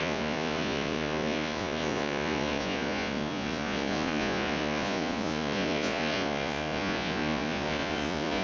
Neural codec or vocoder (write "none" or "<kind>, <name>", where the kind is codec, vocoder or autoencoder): vocoder, Vocos